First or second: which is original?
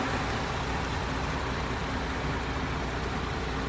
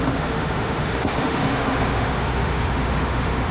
first